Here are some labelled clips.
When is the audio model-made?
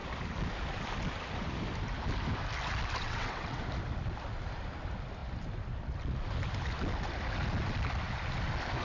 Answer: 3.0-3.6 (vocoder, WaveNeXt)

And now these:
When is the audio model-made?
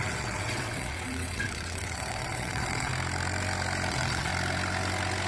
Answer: 0.0-2.9 (vocoder, WaveNeXt); 3.9-4.3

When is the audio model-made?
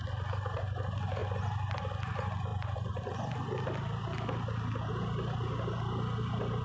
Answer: none